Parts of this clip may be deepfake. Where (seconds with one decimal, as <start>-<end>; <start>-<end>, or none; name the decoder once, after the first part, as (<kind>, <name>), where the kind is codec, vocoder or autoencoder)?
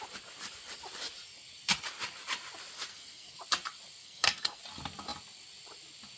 2.9-3.4 (codec, SNAC); 4.0-4.6